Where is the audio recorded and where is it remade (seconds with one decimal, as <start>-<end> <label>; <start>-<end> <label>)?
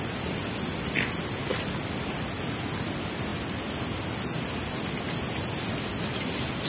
0.0-6.7 recorded